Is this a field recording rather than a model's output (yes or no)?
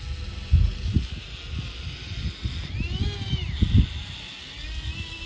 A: yes